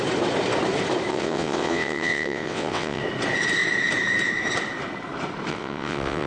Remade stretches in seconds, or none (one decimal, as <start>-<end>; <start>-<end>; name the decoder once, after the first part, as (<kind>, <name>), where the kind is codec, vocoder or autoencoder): 1.1-3.0 (vocoder, WaveNeXt); 5.5-6.3